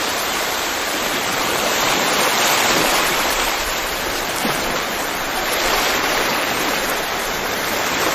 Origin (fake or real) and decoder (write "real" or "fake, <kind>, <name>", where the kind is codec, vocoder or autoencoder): fake, vocoder, BigVGAN v2